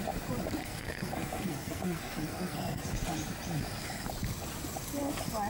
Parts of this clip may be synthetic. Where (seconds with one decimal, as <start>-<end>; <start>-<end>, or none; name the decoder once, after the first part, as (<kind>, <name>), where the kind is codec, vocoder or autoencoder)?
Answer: 0.6-2.9 (codec, SNAC)